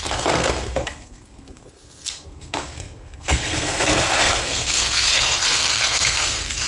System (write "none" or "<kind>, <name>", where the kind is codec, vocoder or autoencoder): codec, SNAC